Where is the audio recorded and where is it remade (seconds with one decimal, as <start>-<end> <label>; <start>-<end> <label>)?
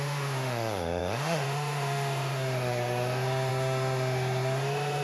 0.0-5.0 remade